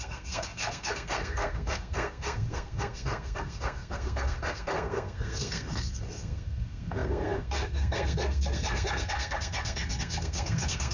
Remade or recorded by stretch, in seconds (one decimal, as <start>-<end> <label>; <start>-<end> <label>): 0.0-10.9 remade